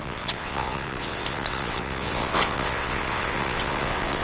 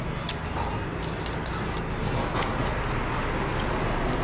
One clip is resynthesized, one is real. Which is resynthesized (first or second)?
first